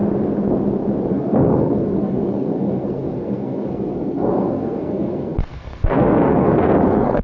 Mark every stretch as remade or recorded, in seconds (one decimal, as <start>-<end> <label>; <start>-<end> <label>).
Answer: 0.0-1.1 recorded; 1.1-7.2 remade

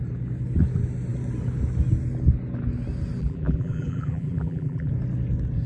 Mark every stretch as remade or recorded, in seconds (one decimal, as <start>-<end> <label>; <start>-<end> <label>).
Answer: 0.0-3.2 recorded; 3.2-4.9 remade; 4.9-5.7 recorded

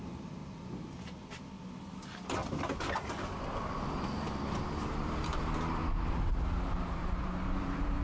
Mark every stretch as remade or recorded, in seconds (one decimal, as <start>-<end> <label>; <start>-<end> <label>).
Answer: 0.0-0.4 remade; 0.4-4.9 recorded; 4.9-5.8 remade; 5.8-6.4 recorded; 6.4-8.0 remade

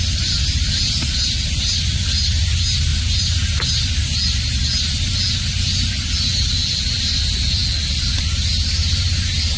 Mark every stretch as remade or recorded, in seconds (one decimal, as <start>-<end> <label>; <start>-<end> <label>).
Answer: 0.0-9.6 recorded